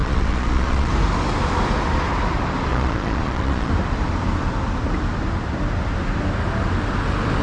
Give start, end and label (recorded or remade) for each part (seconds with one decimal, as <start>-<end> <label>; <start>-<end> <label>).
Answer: 0.0-0.9 remade; 0.9-2.7 recorded; 2.7-3.7 remade; 3.7-7.4 recorded